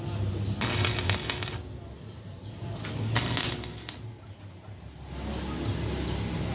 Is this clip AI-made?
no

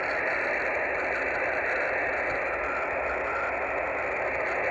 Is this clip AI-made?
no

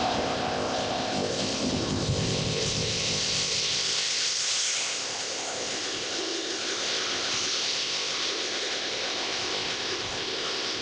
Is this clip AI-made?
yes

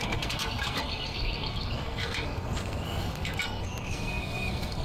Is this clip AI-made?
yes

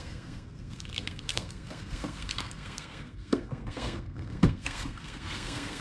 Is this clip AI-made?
yes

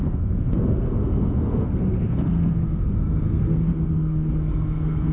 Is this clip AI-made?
yes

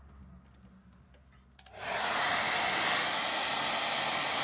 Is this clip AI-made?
no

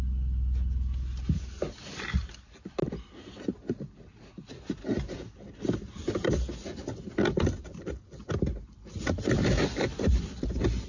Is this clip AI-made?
no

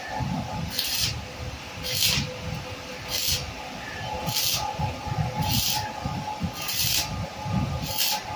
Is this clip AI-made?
no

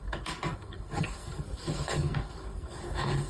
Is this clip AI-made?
yes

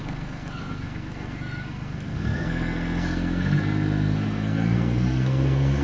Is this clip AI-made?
yes